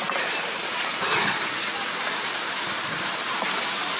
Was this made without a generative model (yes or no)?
yes